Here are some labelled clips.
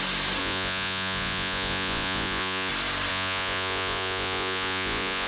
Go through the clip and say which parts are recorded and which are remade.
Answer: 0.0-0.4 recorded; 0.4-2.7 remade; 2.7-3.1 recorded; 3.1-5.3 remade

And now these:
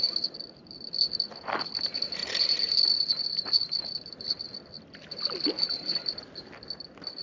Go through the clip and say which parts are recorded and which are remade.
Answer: 0.0-7.2 recorded

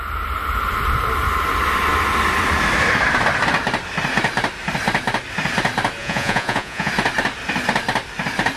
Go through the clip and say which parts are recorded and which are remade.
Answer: 0.0-6.0 recorded; 6.0-6.9 remade; 6.9-8.6 recorded

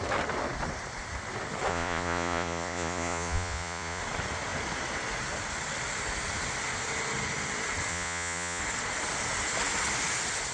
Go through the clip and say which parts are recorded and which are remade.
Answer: 0.0-1.7 recorded; 1.7-4.0 remade; 4.0-7.9 recorded; 7.9-8.6 remade; 8.6-10.5 recorded

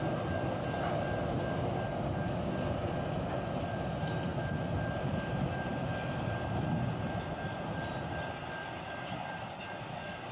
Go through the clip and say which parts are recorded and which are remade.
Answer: 0.0-10.3 recorded

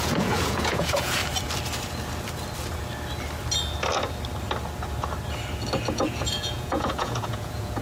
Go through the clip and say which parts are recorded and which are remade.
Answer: 0.0-1.2 remade; 1.2-5.9 recorded; 5.9-7.8 remade

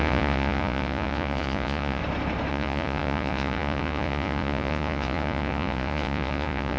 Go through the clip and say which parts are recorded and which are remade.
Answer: 0.0-2.0 remade; 2.0-2.5 recorded; 2.5-6.8 remade